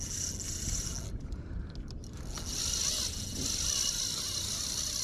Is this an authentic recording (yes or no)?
yes